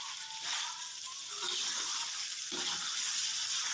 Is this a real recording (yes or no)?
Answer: yes